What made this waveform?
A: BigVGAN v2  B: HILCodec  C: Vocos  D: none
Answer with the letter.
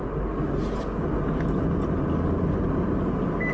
D